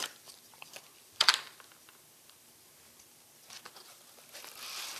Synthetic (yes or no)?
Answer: yes